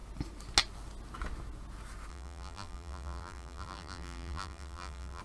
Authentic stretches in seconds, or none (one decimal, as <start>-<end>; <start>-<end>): 0.0-2.1

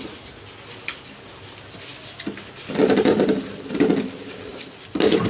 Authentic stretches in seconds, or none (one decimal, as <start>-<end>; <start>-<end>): 0.0-4.5

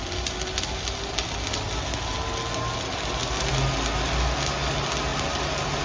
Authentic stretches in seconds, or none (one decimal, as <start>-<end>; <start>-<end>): 0.0-5.8

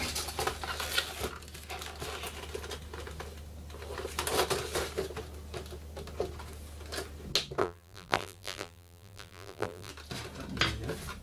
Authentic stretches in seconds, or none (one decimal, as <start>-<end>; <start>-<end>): 0.0-7.6; 9.9-11.2

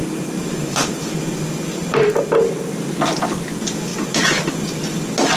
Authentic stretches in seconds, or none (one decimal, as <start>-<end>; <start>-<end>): 1.0-5.4

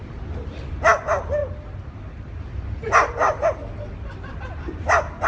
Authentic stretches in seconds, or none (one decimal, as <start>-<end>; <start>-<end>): 0.7-5.3